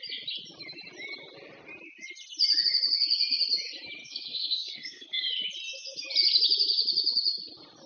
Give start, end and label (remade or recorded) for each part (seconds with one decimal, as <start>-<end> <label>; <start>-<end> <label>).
0.0-4.0 recorded; 4.0-5.3 remade; 5.3-7.9 recorded